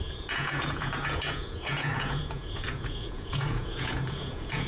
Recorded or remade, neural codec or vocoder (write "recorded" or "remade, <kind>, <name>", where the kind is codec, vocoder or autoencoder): remade, vocoder, Vocos